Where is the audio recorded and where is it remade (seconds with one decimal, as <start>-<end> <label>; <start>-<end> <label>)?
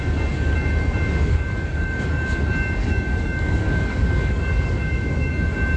0.0-1.2 recorded; 1.2-2.4 remade; 2.4-2.8 recorded; 2.8-5.3 remade; 5.3-5.8 recorded